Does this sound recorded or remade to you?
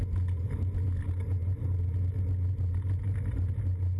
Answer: recorded